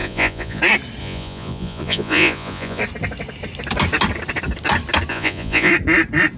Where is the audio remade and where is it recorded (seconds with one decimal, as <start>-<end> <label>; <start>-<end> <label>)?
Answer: 0.0-0.6 remade; 0.6-1.0 recorded; 1.0-2.8 remade; 2.8-5.1 recorded; 5.1-5.7 remade; 5.7-6.4 recorded